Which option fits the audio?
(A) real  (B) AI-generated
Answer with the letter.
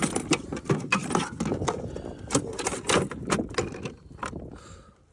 A